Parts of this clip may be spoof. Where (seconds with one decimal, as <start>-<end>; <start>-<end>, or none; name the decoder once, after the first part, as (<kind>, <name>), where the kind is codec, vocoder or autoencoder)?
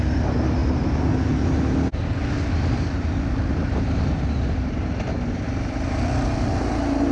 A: none